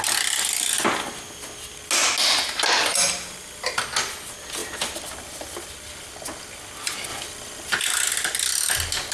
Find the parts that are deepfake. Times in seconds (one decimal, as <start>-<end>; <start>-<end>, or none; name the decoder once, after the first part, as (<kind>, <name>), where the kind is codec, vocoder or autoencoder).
none